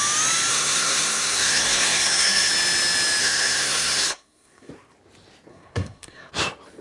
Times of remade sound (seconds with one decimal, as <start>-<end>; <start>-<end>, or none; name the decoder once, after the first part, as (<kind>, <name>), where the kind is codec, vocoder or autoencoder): 0.5-2.5 (codec, SNAC); 3.2-4.7; 5.5-6.3